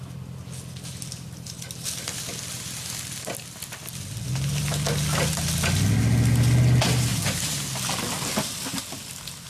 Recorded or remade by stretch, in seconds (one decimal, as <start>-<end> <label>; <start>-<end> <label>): 0.0-9.5 recorded